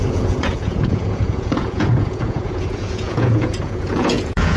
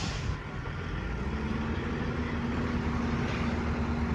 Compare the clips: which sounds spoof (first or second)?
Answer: first